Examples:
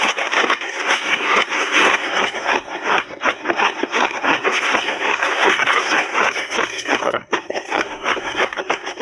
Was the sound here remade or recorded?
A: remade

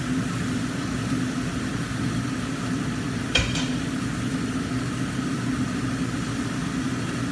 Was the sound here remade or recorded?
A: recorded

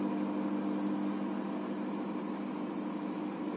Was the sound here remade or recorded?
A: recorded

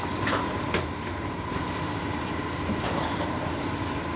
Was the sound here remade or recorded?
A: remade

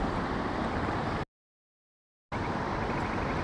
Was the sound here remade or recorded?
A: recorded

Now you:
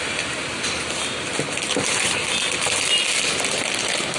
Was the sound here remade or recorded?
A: recorded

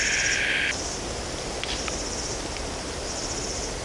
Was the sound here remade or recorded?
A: recorded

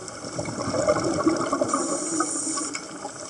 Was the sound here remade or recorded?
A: recorded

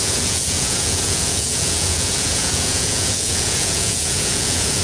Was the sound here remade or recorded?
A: remade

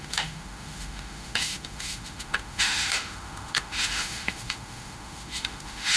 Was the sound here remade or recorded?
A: remade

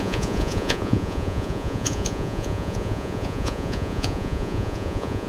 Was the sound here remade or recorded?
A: remade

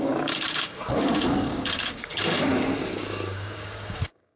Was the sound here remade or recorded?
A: remade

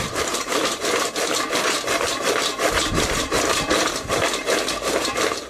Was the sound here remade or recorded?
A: remade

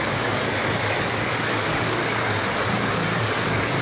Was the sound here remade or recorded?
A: remade